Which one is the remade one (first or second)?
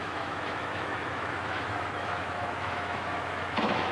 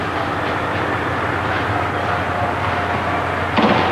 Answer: first